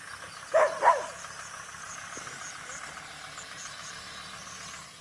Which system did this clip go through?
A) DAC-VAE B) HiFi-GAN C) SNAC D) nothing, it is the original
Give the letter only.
D